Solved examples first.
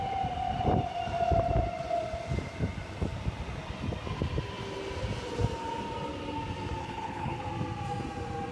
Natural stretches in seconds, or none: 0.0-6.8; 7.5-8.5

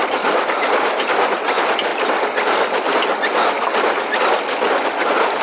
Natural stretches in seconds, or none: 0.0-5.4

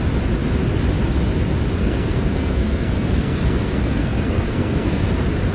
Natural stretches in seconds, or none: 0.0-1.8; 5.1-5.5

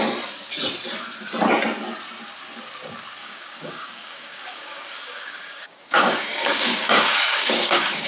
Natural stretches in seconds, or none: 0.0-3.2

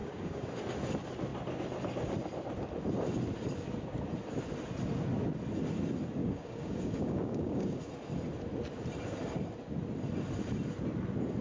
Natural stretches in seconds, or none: 0.6-6.2; 7.8-11.4

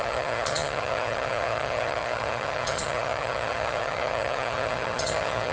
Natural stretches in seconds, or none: none

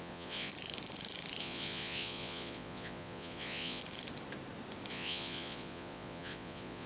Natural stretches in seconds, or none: 0.5-1.4; 3.8-4.9